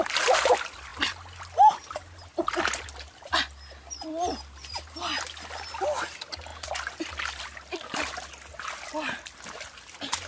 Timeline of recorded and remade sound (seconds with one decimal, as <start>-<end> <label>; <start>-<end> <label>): 0.0-10.3 recorded

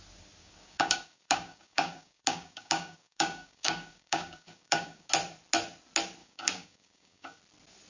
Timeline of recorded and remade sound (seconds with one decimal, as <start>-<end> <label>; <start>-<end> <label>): 0.0-0.4 recorded; 0.4-5.1 remade; 5.1-6.2 recorded; 6.2-7.4 remade; 7.4-7.9 recorded

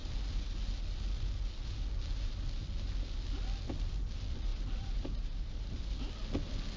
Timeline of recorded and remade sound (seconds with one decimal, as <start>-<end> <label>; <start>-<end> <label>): 0.0-4.5 recorded; 4.5-5.8 remade; 5.8-6.8 recorded

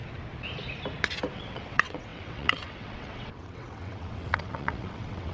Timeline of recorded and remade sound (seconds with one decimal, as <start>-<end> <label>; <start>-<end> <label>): 0.0-1.3 recorded; 1.3-5.3 remade

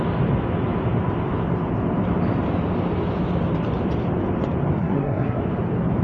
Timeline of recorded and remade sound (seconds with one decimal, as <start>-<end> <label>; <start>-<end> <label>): 0.0-4.8 recorded; 4.8-5.4 remade; 5.4-6.0 recorded

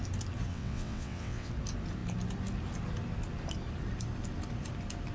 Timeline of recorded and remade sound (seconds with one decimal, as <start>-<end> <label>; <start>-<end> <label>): 0.0-0.5 recorded; 0.5-1.5 remade; 1.5-5.1 recorded

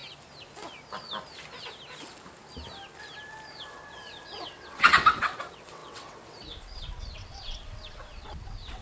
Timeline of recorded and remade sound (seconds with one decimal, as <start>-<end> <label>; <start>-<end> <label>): 0.0-3.7 recorded; 3.7-8.8 remade

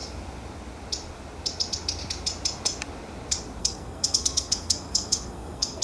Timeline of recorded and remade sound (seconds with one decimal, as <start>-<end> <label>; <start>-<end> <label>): 0.0-3.6 recorded; 3.6-5.8 remade